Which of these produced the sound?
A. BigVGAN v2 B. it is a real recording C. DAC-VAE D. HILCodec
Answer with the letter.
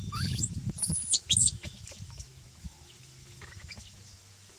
C